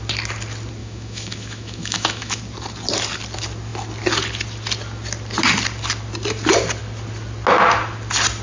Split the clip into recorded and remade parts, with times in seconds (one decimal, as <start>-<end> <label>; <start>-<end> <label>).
0.0-0.8 recorded; 0.8-2.4 remade; 2.4-8.4 recorded